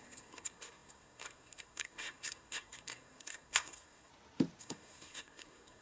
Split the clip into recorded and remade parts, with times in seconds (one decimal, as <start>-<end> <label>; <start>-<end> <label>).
0.0-4.1 remade; 4.1-4.6 recorded; 4.6-5.8 remade